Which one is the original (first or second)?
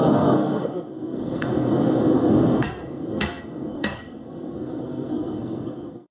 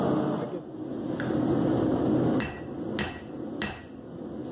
second